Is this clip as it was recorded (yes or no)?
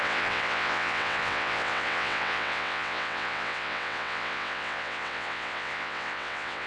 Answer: no